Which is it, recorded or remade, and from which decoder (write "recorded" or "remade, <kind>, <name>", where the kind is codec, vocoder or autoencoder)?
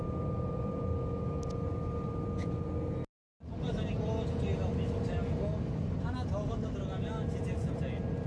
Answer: recorded